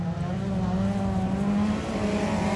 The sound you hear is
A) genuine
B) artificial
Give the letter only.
A